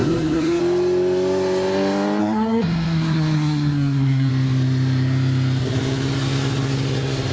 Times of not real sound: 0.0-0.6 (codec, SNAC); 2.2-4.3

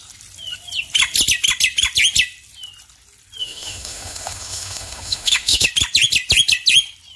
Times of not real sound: 3.4-5.7 (autoencoder, DAC-VAE)

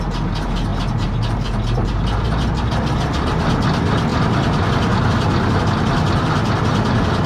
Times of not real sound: none

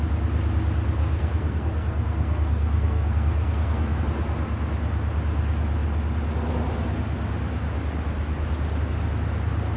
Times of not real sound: 1.0-4.0 (codec, SNAC)

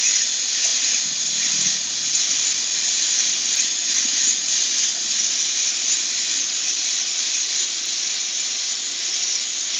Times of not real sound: none

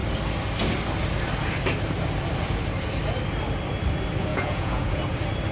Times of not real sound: 4.3-5.0 (vocoder, Vocos)

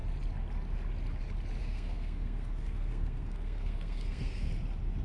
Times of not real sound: 1.6-4.5 (codec, SNAC)